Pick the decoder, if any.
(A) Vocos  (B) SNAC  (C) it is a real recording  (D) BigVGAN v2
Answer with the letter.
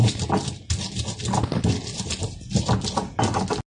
C